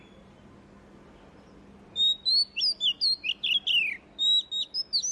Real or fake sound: real